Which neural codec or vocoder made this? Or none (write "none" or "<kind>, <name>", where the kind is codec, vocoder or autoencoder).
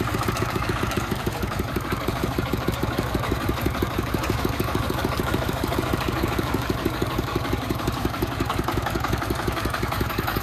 codec, DAC